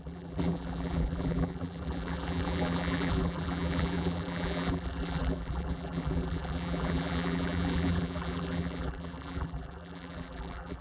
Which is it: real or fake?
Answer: fake